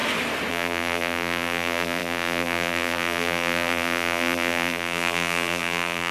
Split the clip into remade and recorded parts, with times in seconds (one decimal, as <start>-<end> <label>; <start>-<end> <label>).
0.0-0.5 recorded; 0.5-6.1 remade